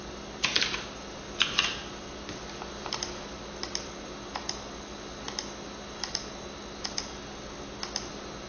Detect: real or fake real